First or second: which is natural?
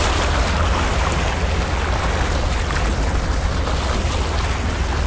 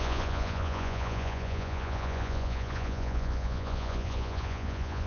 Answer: first